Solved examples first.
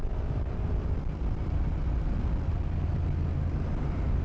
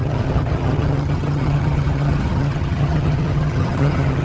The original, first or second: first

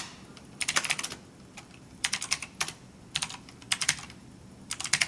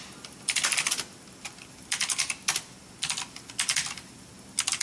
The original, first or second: second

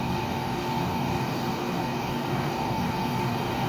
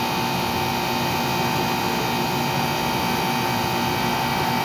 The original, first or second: second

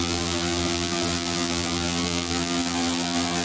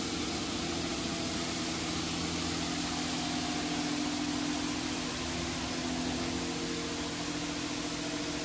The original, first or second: second